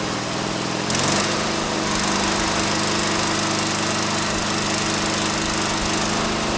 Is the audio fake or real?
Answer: real